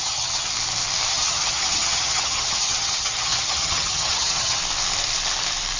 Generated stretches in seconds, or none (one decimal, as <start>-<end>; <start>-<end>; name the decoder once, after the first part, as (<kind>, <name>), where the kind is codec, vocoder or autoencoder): 0.0-0.5 (vocoder, HiFi-GAN); 1.1-4.6